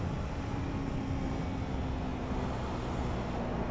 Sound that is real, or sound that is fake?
real